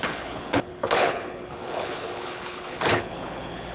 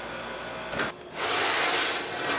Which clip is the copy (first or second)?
first